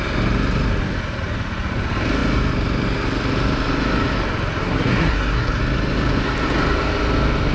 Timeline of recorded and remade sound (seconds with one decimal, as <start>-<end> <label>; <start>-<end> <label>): 0.0-4.6 recorded; 4.6-5.6 remade; 5.6-7.5 recorded